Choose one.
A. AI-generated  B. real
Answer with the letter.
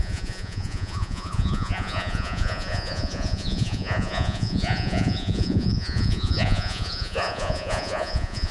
A